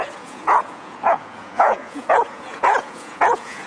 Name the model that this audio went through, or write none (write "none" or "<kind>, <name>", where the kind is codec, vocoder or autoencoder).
vocoder, Vocos